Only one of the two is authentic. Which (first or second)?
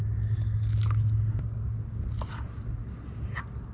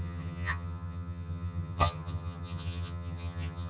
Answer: first